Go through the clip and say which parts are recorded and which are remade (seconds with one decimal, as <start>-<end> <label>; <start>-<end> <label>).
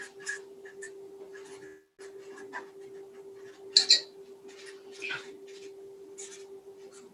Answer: 0.0-7.1 recorded